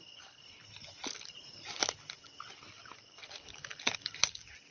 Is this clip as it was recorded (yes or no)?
yes